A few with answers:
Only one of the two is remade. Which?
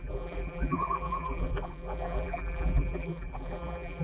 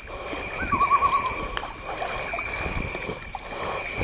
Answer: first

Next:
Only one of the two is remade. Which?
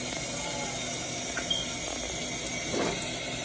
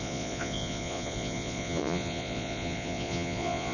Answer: second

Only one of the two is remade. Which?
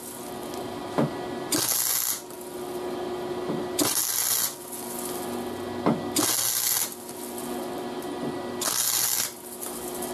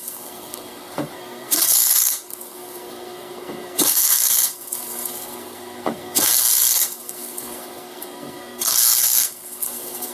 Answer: second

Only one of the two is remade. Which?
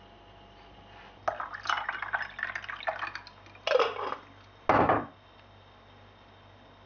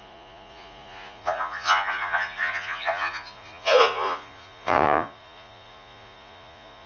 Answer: second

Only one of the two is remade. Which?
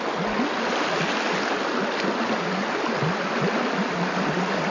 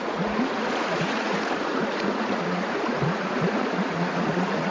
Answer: second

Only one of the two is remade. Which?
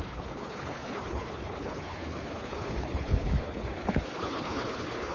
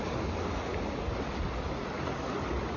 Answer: first